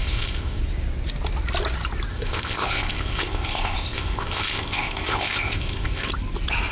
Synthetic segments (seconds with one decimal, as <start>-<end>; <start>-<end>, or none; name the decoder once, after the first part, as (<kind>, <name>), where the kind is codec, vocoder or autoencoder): 0.0-0.6 (codec, ZipCodec); 2.1-6.1